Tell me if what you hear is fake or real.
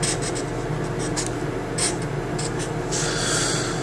real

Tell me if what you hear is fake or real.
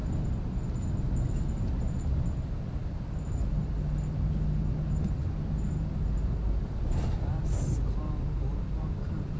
real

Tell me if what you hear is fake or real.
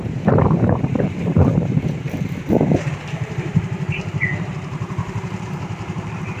fake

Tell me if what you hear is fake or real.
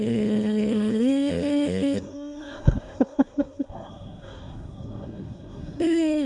fake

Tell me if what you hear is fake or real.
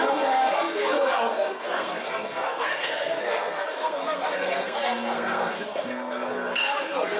fake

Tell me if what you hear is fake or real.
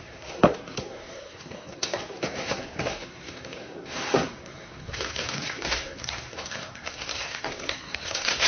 fake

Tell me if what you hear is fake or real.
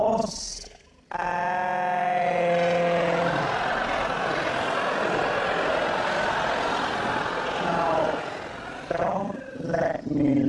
real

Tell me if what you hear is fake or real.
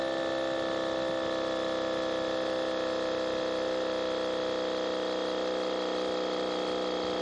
real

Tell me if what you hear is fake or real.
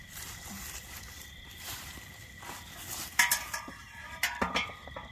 real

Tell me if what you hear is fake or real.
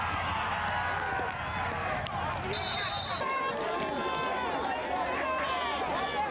real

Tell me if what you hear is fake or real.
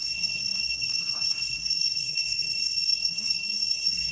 fake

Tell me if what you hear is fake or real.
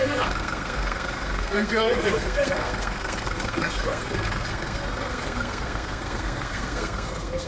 fake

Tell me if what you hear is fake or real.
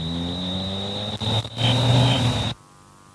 real